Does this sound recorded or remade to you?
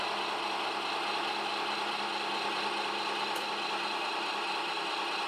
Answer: recorded